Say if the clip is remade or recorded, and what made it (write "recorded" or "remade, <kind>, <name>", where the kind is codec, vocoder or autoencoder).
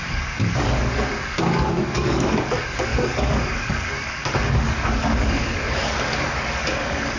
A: remade, codec, DAC